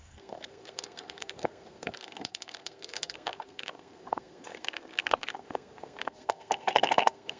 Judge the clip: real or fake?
fake